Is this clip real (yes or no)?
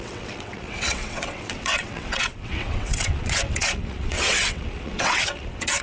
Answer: no